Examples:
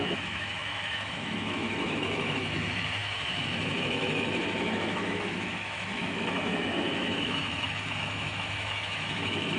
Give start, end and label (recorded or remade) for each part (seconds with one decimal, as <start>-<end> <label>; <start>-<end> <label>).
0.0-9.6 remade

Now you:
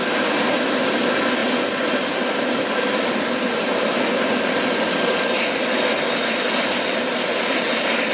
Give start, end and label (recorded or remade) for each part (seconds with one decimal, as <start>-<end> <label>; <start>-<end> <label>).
0.0-8.1 recorded

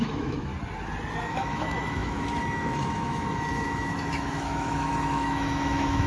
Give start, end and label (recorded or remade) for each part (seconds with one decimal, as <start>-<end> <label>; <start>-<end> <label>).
0.0-0.5 remade; 0.5-1.2 recorded; 1.2-6.1 remade

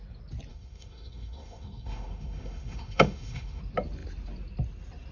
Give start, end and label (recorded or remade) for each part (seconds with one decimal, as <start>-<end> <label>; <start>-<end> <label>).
0.0-0.5 recorded; 0.5-3.6 remade; 3.6-5.1 recorded